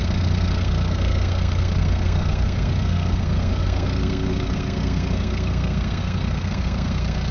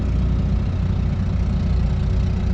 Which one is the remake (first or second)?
first